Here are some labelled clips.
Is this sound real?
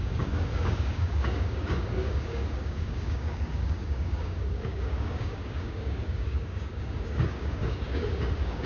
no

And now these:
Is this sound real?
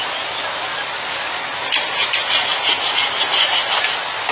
yes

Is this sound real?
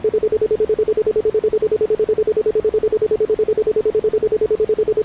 yes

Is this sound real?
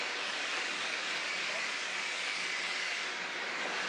no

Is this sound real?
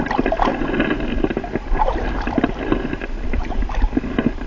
yes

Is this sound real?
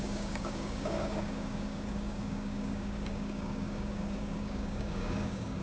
no